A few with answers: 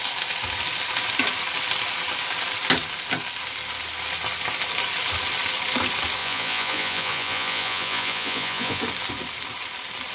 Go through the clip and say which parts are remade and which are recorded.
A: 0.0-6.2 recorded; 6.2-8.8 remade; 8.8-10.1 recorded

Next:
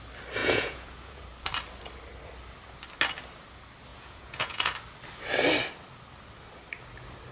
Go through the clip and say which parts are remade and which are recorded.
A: 0.0-0.4 recorded; 0.4-1.2 remade; 1.2-3.9 recorded; 3.9-4.7 remade; 4.7-7.3 recorded

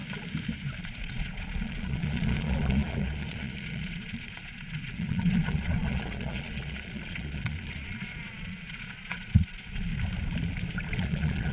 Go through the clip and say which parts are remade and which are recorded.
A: 0.0-0.8 recorded; 0.8-9.9 remade; 9.9-11.0 recorded; 11.0-11.5 remade

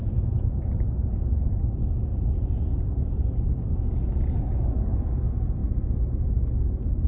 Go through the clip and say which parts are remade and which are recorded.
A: 0.0-2.1 recorded; 2.1-3.2 remade; 3.2-3.7 recorded; 3.7-4.8 remade; 4.8-7.1 recorded

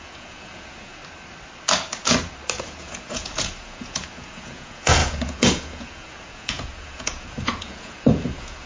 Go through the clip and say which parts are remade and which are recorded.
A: 0.0-1.0 remade; 1.0-2.6 recorded; 2.6-8.7 remade

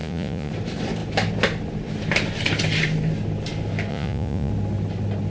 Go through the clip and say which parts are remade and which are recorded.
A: 0.0-0.5 remade; 0.5-3.9 recorded; 3.9-4.5 remade; 4.5-5.3 recorded

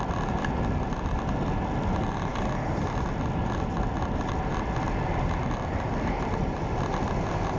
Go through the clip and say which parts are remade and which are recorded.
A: 0.0-7.6 recorded

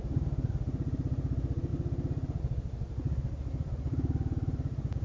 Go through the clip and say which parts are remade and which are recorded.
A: 0.0-5.0 recorded